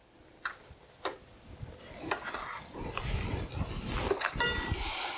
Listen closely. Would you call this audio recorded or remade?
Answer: recorded